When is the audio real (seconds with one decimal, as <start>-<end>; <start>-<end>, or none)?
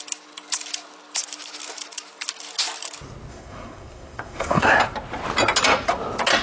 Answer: 0.0-3.3; 4.7-6.4